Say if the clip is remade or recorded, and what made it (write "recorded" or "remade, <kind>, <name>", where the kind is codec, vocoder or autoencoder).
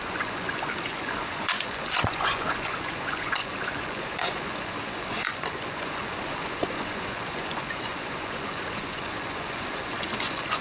remade, vocoder, Vocos